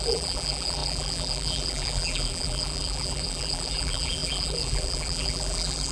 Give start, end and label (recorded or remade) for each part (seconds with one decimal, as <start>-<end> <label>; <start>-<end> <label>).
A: 0.0-5.9 remade